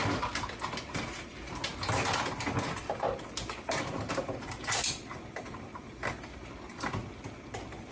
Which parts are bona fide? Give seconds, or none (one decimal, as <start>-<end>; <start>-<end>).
0.0-7.9